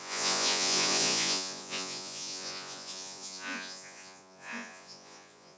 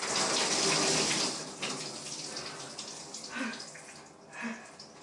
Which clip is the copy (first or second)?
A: first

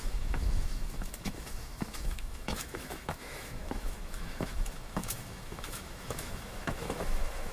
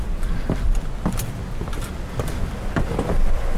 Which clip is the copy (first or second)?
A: first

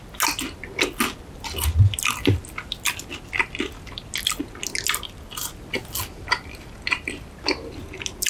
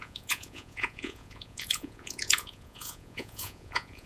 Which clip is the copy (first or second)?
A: second